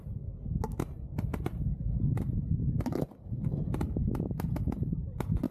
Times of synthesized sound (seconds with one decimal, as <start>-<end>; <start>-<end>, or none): none